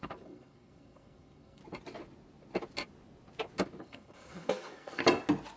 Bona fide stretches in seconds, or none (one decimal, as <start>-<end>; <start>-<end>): 1.6-3.8; 5.0-5.6